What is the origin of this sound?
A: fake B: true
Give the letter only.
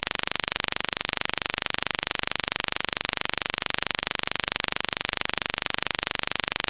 A